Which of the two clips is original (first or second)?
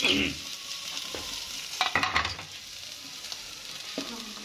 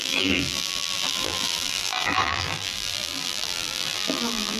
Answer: first